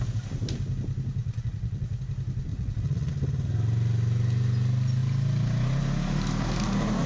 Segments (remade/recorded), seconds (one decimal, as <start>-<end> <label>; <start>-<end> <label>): 0.0-1.2 recorded; 1.2-2.0 remade; 2.0-2.5 recorded; 2.5-3.1 remade; 3.1-7.1 recorded